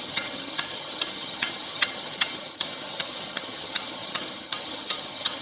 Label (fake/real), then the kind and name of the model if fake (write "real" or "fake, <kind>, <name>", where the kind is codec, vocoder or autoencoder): fake, vocoder, HiFi-GAN